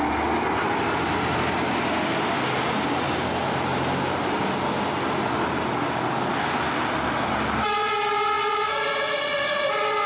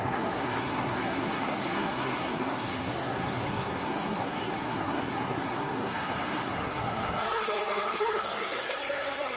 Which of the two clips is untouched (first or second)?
first